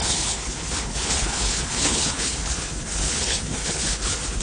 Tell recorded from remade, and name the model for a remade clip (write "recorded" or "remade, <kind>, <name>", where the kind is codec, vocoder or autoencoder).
remade, codec, HILCodec